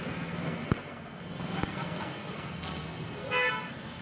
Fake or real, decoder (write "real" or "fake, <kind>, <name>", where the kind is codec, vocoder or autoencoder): fake, codec, SNAC